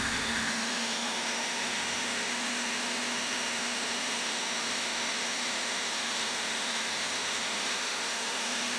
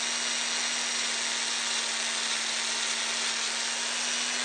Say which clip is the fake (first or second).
first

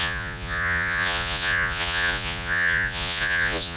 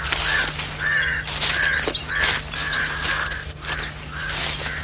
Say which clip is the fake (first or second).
first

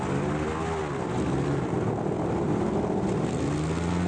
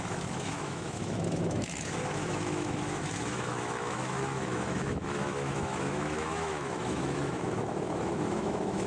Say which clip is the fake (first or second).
second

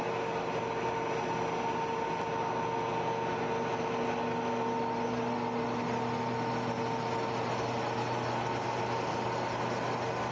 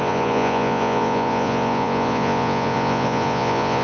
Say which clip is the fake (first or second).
second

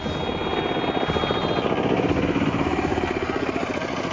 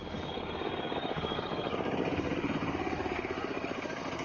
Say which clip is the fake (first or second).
second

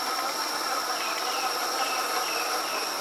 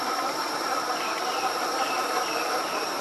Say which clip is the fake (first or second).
second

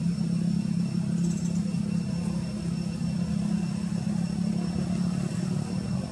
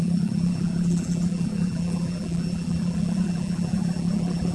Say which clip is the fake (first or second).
second